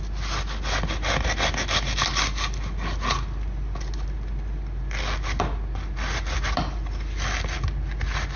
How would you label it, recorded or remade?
recorded